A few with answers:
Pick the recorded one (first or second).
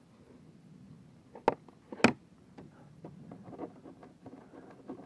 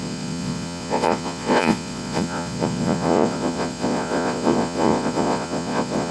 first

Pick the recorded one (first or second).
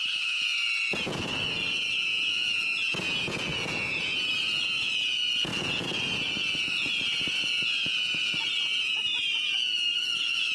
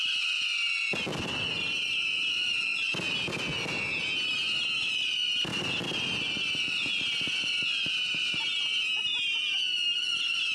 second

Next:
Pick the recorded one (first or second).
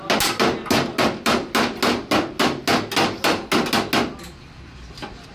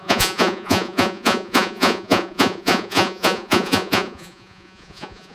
first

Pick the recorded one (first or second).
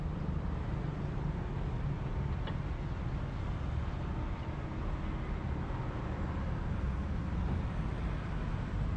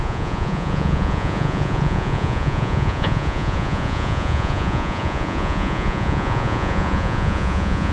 first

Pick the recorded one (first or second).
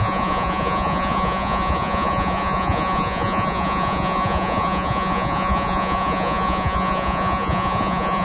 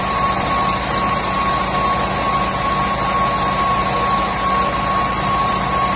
second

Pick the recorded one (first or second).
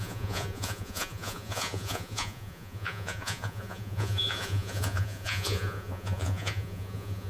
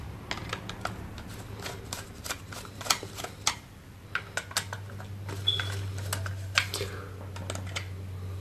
second